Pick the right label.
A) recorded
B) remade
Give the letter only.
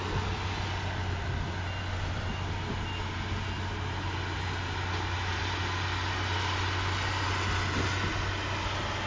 A